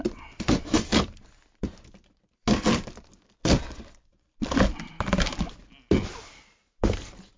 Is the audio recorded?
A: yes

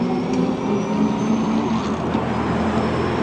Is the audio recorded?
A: yes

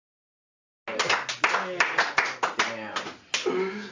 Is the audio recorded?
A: yes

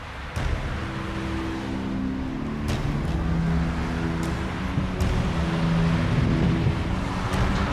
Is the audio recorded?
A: yes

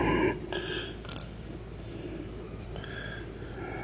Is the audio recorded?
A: yes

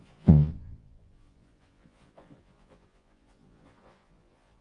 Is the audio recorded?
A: no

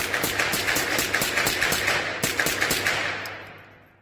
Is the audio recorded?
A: yes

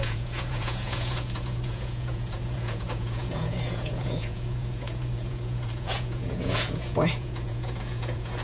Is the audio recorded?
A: no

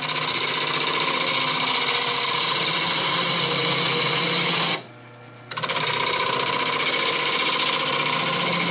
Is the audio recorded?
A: yes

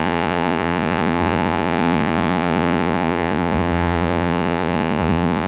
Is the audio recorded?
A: no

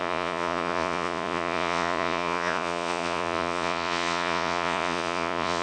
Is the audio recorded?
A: no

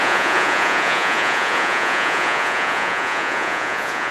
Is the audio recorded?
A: no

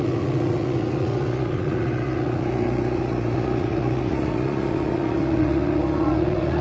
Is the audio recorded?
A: no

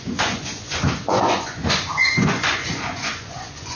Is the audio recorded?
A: no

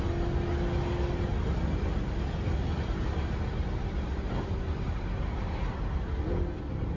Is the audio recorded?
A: yes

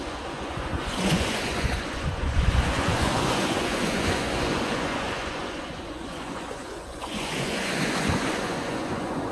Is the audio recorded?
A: no